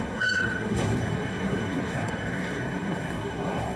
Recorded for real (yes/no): no